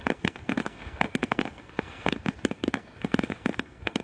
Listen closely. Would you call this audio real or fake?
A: fake